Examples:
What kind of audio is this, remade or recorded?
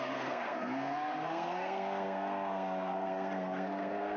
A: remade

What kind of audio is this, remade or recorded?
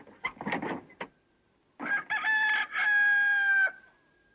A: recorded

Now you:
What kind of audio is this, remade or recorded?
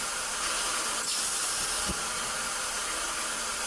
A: recorded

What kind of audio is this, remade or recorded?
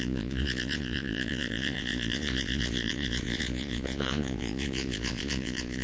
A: remade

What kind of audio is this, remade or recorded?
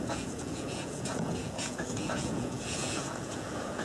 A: remade